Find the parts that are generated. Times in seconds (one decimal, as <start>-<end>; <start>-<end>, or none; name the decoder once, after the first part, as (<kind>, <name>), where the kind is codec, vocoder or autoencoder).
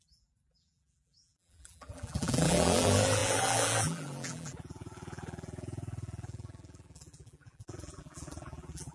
0.0-8.9 (vocoder, BigVGAN v2)